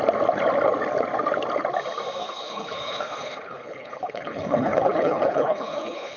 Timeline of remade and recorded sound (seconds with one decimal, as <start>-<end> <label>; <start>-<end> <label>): 0.0-2.2 recorded; 2.2-6.2 remade